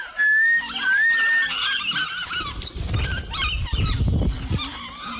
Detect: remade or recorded recorded